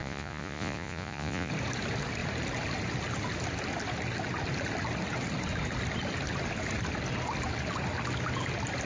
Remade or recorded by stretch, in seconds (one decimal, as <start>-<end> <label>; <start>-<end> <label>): 0.0-1.5 remade; 1.5-8.9 recorded